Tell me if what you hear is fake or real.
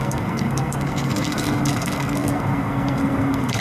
fake